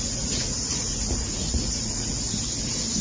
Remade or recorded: remade